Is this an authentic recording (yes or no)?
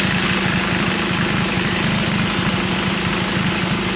yes